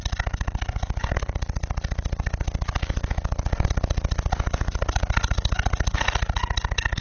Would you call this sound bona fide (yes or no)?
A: yes